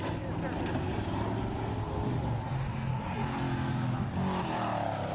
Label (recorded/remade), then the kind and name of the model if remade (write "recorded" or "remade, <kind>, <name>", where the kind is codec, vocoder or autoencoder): recorded